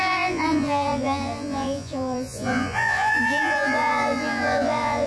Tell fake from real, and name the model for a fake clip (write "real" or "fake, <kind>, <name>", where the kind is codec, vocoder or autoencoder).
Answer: fake, vocoder, Vocos